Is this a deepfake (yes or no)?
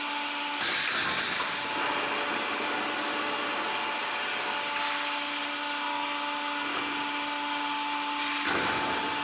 no